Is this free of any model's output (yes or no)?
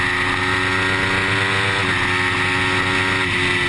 yes